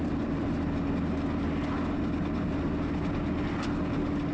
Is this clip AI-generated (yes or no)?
no